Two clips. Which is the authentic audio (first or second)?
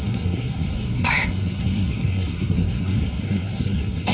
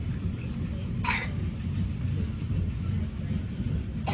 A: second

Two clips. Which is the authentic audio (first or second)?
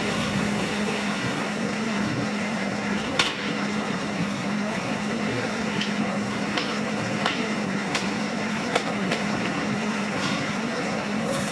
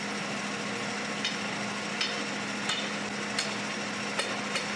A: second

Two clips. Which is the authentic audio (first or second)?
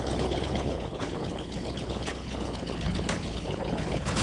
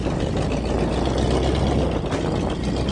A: second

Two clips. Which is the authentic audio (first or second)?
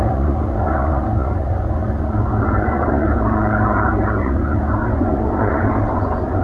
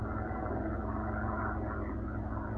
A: second